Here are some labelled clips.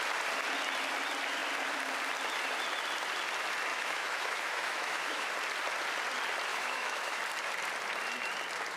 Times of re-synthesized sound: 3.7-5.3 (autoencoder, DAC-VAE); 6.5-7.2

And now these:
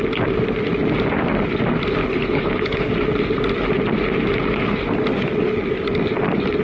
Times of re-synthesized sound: 2.0-2.9 (codec, HILCodec)

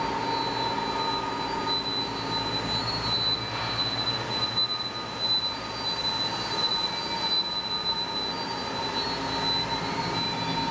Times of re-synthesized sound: none

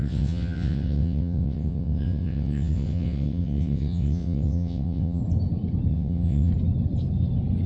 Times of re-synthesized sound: 0.0-5.2 (vocoder, WaveNeXt); 5.9-6.5

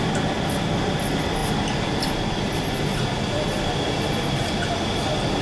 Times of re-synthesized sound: none

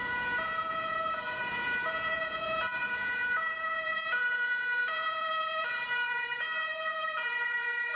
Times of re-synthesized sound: 0.0-8.0 (vocoder, Vocos)

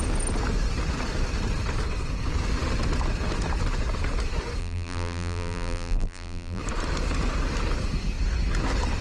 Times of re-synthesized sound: 4.6-6.6 (vocoder, BigVGAN v2)